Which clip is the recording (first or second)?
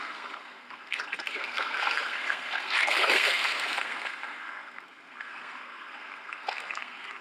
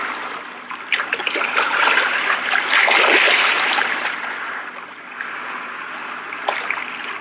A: second